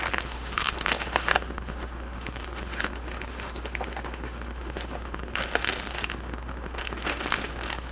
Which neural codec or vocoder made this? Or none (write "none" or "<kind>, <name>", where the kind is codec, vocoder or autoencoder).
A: autoencoder, DAC-VAE